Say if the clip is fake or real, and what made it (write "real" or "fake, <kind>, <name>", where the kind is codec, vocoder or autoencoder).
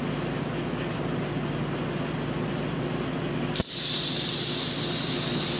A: real